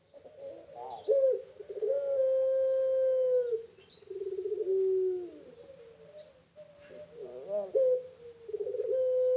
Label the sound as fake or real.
real